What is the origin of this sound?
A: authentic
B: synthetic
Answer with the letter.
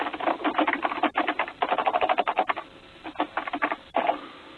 A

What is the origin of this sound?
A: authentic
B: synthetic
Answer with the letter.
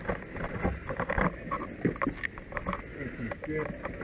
A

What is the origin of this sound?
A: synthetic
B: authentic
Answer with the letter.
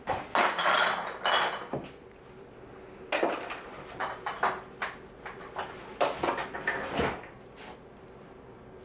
B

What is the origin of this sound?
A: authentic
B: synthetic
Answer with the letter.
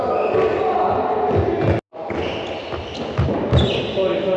A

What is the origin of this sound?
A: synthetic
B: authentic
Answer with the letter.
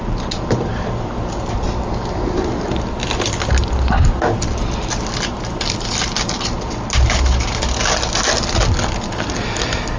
B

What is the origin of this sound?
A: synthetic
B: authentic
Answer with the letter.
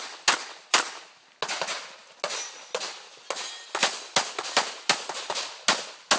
B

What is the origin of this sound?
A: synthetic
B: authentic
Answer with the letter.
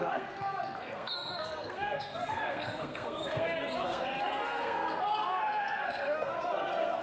A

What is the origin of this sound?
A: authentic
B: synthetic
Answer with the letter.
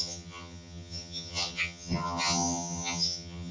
B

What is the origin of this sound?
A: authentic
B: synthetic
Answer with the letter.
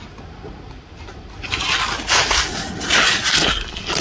A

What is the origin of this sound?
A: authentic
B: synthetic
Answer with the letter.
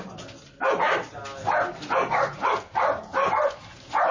A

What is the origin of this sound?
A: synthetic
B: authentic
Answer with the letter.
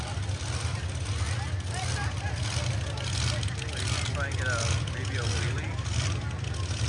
B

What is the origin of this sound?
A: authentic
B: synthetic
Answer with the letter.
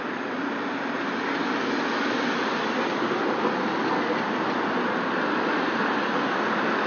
A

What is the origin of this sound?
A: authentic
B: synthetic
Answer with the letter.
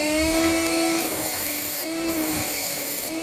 B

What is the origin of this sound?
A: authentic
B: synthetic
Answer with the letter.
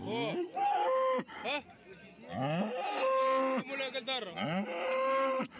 A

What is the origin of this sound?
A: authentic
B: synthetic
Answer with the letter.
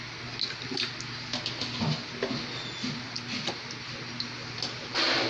A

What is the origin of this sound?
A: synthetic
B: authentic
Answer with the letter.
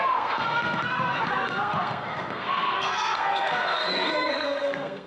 A